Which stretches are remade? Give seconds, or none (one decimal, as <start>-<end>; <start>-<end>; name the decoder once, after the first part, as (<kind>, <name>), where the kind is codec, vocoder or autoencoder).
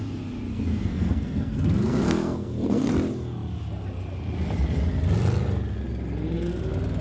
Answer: 0.5-2.9 (codec, SNAC)